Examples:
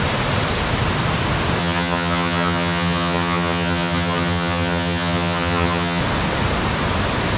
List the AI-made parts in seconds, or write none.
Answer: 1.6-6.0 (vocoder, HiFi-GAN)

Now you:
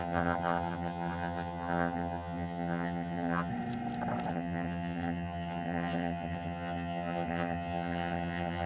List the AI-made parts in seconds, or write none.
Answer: 0.0-3.5 (vocoder, HiFi-GAN); 4.3-8.7